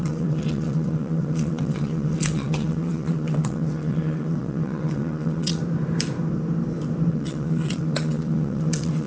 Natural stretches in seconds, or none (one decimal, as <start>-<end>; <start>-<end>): 5.6-7.1